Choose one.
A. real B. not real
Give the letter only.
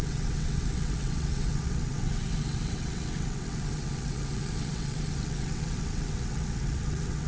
B